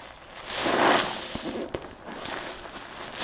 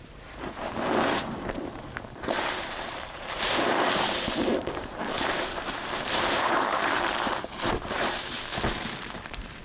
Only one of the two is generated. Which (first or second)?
second